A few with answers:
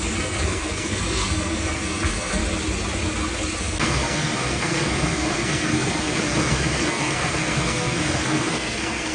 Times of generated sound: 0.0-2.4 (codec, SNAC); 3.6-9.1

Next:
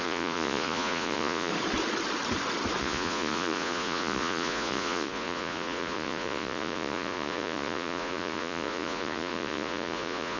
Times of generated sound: 0.0-1.5 (vocoder, Vocos); 2.8-10.4

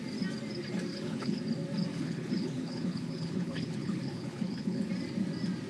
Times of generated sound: 0.9-1.4 (codec, HILCodec); 1.9-4.9

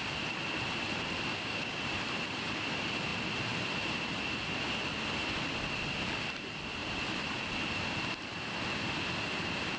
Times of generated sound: 1.3-1.8 (codec, DAC)

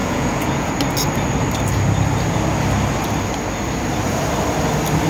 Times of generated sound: 0.0-0.7 (vocoder, Vocos)

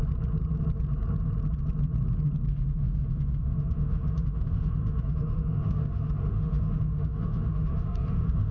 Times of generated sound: 2.5-8.5 (autoencoder, DAC-VAE)